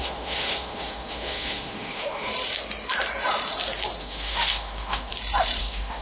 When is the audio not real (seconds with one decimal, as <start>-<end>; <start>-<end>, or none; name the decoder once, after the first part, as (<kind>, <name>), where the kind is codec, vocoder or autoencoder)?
0.0-2.3 (autoencoder, DAC-VAE); 4.0-5.1; 5.6-6.0